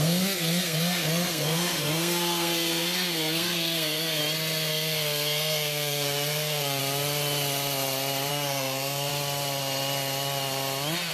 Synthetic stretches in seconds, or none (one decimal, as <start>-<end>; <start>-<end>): 0.0-4.2; 4.7-6.8; 8.3-9.1